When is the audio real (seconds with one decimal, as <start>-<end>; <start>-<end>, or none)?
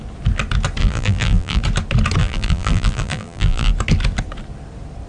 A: 0.0-0.8; 1.6-2.2; 3.7-5.1